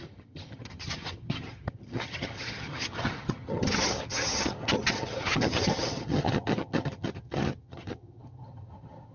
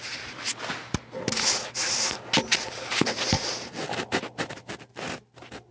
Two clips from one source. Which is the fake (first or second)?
first